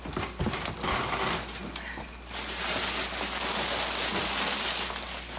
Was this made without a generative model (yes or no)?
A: yes